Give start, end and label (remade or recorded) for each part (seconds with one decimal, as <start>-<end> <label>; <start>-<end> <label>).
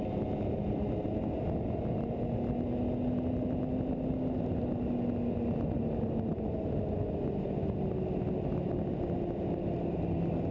0.0-10.5 recorded